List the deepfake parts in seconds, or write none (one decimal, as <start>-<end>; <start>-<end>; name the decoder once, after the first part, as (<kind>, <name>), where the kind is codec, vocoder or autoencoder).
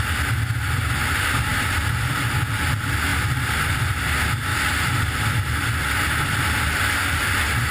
1.5-2.3 (vocoder, BigVGAN v2); 4.5-5.0